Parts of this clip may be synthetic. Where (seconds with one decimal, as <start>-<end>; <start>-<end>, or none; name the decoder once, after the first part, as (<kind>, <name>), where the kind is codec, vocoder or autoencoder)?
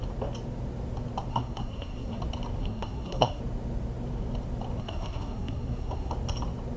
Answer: 1.3-2.2 (codec, SNAC); 2.6-3.4; 4.8-6.1